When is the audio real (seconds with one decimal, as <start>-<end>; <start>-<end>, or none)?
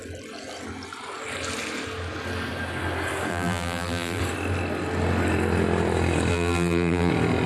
0.0-3.3; 4.2-6.3; 7.1-7.5